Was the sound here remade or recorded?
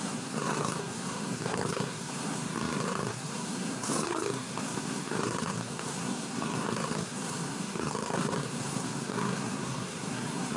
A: remade